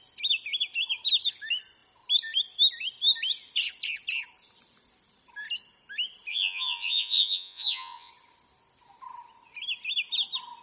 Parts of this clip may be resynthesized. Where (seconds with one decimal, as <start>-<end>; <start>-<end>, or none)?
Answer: 6.3-8.1

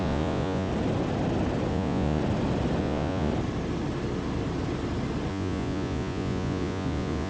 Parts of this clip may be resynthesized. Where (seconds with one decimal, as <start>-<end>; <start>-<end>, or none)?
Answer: 0.0-0.7; 1.7-2.2; 2.8-3.3; 5.3-7.3

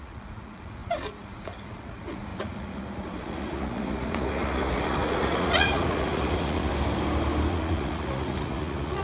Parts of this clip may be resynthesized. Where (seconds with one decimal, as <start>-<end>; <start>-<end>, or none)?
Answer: 0.0-6.7; 7.5-9.0

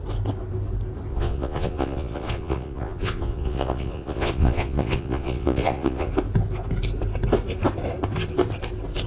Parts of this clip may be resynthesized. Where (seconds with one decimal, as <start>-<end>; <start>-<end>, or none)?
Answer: 1.1-6.1

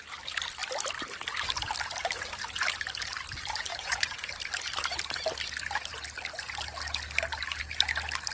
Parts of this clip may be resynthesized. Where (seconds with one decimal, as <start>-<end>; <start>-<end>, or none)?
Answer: 3.7-4.3

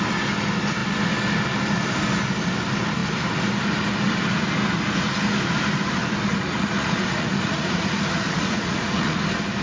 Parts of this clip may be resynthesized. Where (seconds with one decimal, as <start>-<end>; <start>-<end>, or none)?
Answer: 6.3-9.2